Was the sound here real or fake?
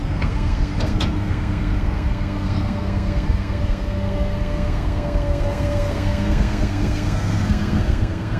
fake